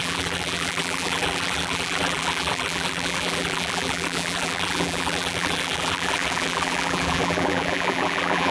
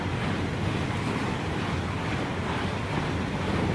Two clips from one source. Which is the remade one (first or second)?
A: first